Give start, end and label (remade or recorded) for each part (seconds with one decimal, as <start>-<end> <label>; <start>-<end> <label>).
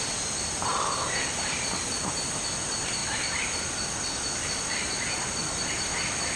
0.0-6.4 recorded